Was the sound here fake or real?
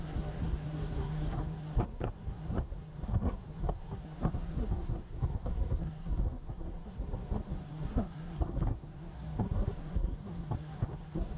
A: fake